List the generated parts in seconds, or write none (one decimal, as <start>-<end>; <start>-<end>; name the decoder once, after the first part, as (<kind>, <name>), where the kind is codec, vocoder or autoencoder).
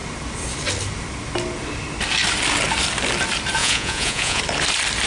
3.6-4.4 (vocoder, Vocos)